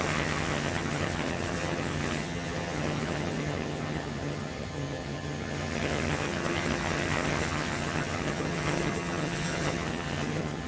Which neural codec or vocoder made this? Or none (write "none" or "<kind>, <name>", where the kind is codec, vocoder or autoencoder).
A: vocoder, HiFi-GAN